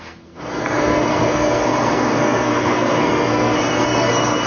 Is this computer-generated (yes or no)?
yes